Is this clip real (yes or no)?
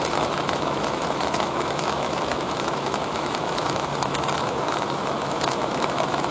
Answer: no